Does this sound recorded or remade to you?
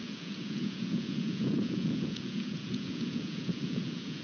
remade